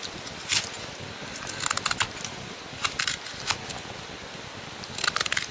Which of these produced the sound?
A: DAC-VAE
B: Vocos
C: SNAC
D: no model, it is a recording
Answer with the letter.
D